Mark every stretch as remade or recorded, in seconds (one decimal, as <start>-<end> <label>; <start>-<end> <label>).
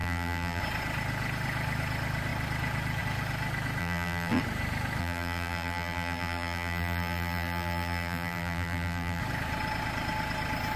0.0-0.6 remade; 0.6-3.8 recorded; 3.8-4.4 remade; 4.4-5.0 recorded; 5.0-9.2 remade; 9.2-10.8 recorded